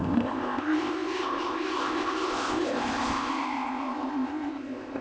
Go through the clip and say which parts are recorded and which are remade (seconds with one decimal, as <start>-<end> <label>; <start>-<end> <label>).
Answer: 0.0-5.0 remade